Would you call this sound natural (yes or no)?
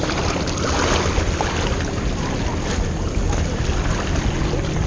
yes